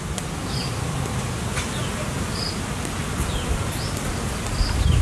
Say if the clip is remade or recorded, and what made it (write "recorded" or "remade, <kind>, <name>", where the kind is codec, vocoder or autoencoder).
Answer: recorded